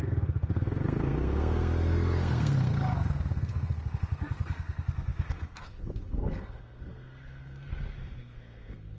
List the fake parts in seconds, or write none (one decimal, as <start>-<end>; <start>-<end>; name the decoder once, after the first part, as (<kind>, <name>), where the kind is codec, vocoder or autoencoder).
0.0-9.0 (codec, SNAC)